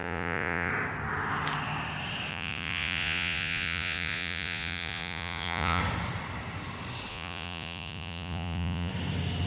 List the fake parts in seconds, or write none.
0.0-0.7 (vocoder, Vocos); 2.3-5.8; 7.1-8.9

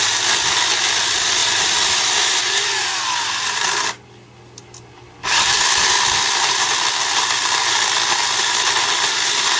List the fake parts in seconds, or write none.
none